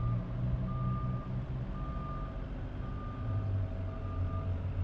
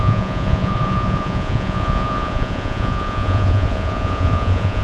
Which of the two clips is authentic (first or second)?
first